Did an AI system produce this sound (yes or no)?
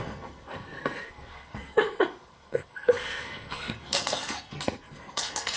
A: yes